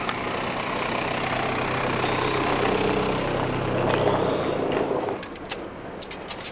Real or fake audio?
real